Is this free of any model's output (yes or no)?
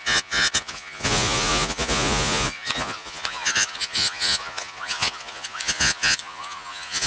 no